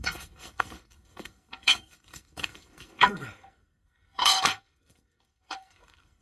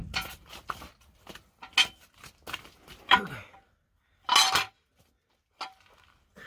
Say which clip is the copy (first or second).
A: first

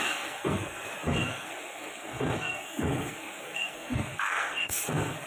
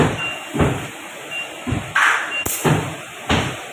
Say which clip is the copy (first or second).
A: first